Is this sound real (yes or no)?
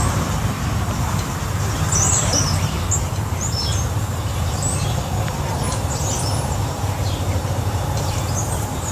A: no